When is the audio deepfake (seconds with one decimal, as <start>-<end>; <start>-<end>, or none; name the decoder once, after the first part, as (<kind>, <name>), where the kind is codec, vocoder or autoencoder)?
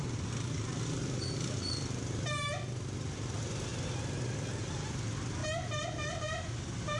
none